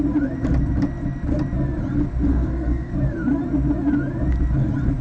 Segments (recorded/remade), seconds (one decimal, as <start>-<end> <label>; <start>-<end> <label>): 0.0-2.3 recorded; 2.3-2.9 remade; 2.9-5.0 recorded